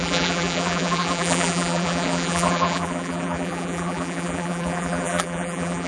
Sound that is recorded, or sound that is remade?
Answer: remade